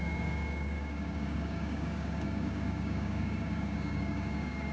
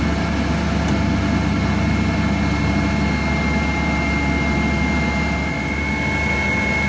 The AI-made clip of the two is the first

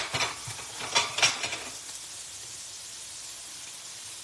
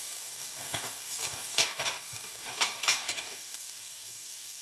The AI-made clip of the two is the second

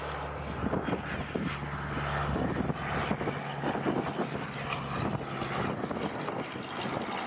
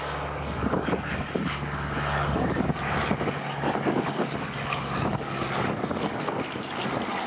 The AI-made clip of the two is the second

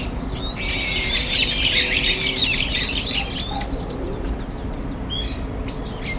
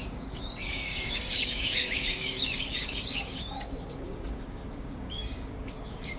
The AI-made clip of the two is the second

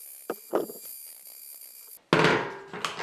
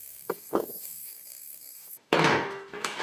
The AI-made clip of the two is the second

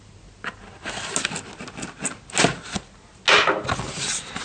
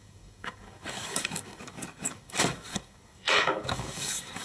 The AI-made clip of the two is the second